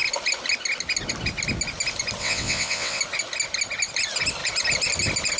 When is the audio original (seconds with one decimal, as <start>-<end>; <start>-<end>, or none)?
0.0-2.2; 3.0-5.4